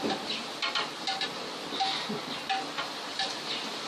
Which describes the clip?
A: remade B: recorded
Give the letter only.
B